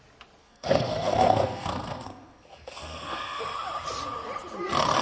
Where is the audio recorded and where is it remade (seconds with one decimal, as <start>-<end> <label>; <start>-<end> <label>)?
0.0-0.4 recorded; 0.4-3.4 remade; 3.4-5.0 recorded